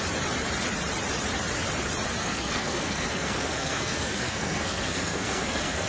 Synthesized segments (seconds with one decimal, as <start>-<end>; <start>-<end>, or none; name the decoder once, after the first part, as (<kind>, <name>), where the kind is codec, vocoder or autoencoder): 2.2-5.9 (codec, SNAC)